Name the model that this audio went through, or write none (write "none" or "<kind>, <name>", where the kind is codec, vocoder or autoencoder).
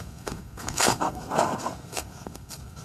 codec, SNAC